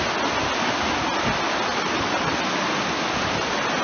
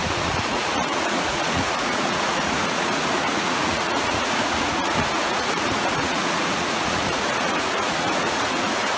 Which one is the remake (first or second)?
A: second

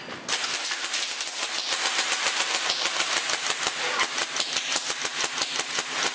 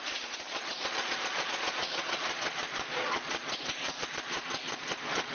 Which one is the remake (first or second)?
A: second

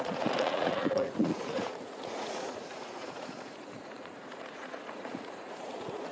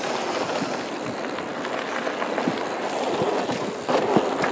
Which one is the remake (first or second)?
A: first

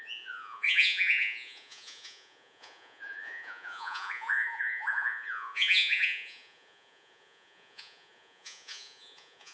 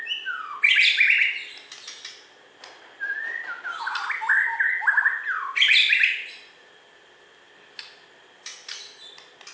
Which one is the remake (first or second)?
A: first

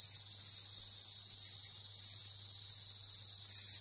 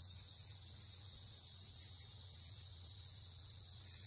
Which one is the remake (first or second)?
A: second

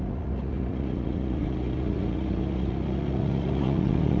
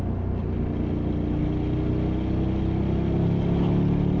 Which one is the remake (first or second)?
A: first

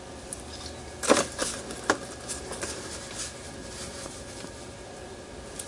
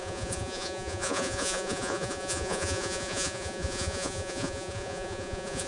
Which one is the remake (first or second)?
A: second